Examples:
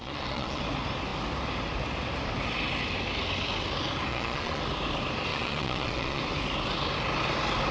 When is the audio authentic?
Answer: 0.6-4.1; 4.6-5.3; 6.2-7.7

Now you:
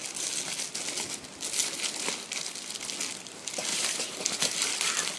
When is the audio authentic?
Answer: 0.0-3.7; 4.7-5.2

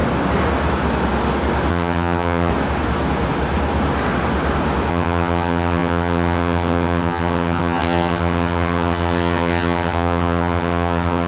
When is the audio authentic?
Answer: 0.0-1.7; 2.5-4.9

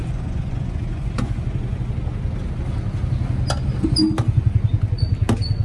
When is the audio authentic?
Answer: 1.9-5.6

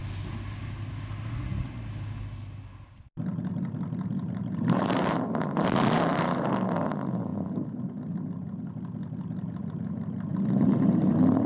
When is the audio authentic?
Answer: 0.0-3.3; 6.5-10.3